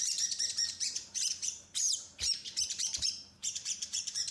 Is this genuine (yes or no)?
no